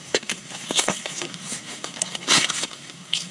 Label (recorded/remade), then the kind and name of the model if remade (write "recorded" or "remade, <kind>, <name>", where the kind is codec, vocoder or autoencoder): remade, codec, SNAC